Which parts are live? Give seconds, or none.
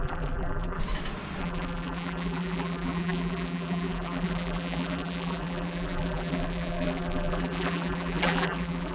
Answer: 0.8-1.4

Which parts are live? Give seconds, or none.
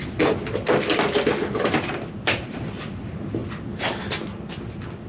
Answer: 0.0-5.1